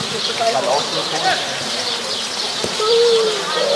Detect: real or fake fake